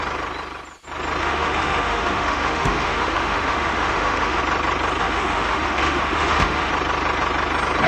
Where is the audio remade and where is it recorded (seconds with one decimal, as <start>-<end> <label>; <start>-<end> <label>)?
0.0-1.2 recorded; 1.2-4.4 remade; 4.4-5.0 recorded; 5.0-6.7 remade; 6.7-7.9 recorded